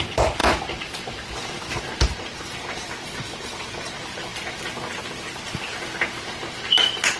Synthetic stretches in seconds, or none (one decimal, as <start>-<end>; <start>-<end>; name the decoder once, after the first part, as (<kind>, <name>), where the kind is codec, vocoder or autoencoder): none